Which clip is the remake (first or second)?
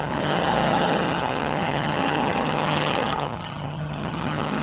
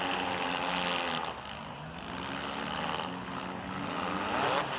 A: first